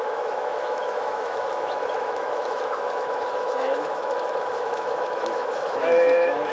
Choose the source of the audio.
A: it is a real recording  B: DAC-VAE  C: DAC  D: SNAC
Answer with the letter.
B